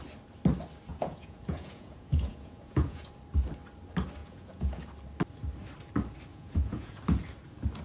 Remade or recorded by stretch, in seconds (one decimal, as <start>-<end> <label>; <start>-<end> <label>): 0.0-0.9 recorded; 0.9-3.1 remade; 3.1-4.2 recorded; 4.2-4.8 remade; 4.8-6.3 recorded; 6.3-7.0 remade; 7.0-7.8 recorded